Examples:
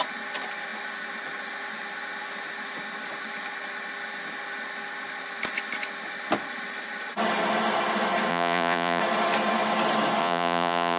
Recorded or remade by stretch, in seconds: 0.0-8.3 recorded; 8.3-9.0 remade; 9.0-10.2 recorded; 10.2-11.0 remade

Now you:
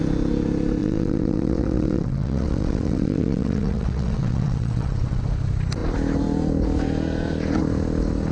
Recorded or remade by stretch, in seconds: 0.0-0.8 recorded; 0.8-5.2 remade; 5.2-8.3 recorded

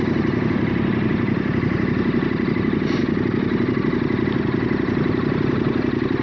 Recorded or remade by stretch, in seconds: 0.0-6.2 remade

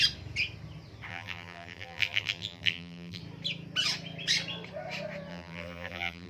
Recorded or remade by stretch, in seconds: 0.0-1.1 recorded; 1.1-3.2 remade; 3.2-5.3 recorded; 5.3-6.3 remade

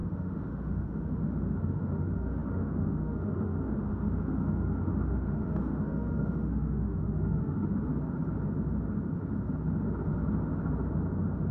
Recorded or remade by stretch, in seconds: 0.0-7.9 remade; 7.9-11.5 recorded

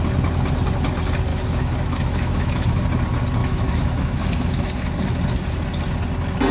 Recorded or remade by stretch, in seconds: 0.0-1.3 recorded; 1.3-2.8 remade; 2.8-3.4 recorded; 3.4-4.7 remade; 4.7-6.5 recorded

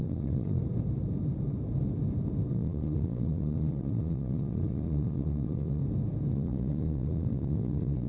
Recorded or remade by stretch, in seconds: 0.0-0.6 remade; 0.6-2.5 recorded; 2.5-5.8 remade; 5.8-6.3 recorded; 6.3-8.1 remade